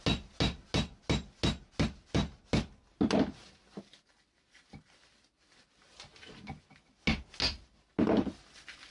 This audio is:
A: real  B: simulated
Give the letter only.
A